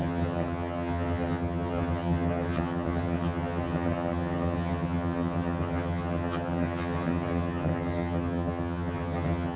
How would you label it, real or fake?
fake